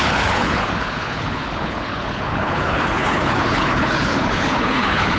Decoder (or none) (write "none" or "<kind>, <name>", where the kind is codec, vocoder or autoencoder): codec, HILCodec